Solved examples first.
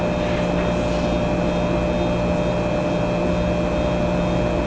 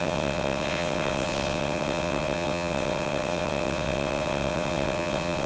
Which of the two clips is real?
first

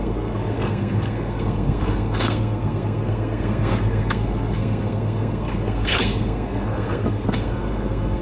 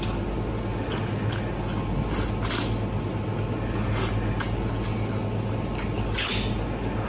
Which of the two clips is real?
second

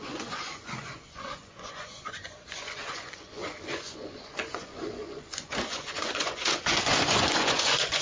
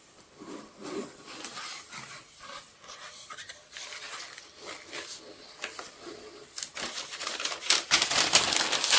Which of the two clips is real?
second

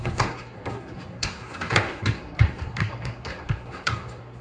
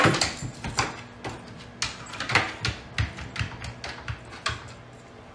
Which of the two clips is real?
second